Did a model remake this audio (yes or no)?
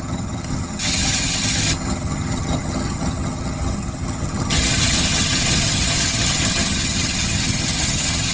yes